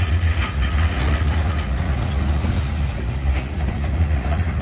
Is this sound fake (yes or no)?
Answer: yes